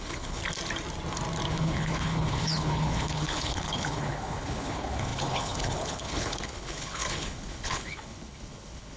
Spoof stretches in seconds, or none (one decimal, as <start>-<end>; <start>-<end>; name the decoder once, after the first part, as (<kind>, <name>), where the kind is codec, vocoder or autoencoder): 0.0-0.4 (codec, HILCodec); 1.5-9.0